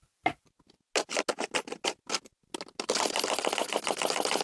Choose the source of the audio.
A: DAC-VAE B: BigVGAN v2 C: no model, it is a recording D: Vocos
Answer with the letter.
C